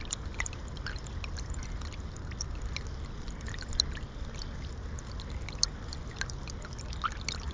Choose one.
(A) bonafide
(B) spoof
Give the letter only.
A